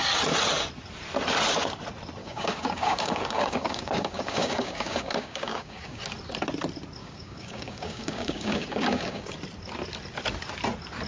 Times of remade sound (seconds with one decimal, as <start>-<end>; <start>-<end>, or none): 2.2-6.0; 7.0-9.3